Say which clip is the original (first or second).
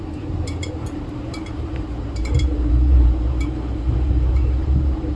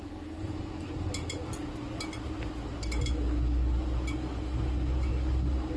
second